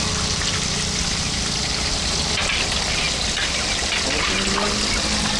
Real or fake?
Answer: real